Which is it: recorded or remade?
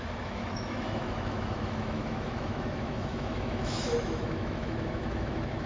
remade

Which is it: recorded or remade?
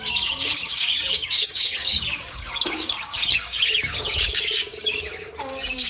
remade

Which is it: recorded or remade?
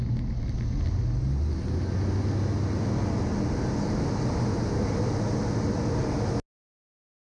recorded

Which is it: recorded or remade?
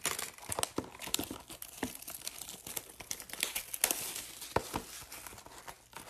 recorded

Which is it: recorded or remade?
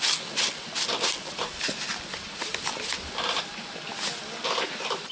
recorded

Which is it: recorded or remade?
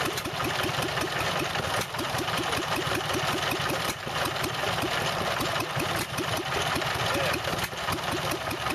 recorded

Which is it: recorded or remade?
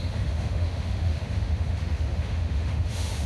remade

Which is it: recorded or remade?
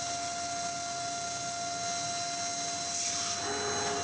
recorded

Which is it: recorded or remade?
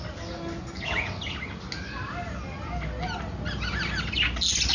recorded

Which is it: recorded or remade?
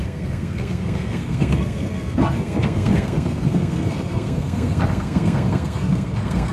remade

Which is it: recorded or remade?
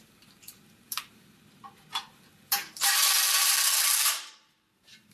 remade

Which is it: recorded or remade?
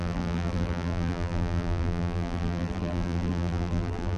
remade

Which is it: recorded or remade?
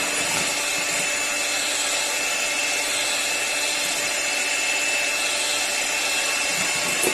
recorded